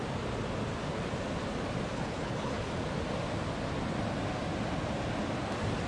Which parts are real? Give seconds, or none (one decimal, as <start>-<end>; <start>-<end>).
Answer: 0.0-1.9; 2.7-5.9